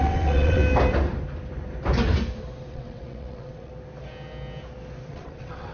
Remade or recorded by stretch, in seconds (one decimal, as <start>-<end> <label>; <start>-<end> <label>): 0.0-0.6 remade; 0.6-2.7 recorded; 2.7-3.7 remade; 3.7-5.1 recorded; 5.1-5.7 remade

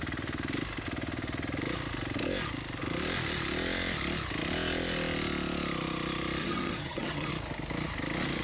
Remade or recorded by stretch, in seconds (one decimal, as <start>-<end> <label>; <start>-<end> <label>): 0.0-6.4 recorded; 6.4-7.3 remade; 7.3-8.4 recorded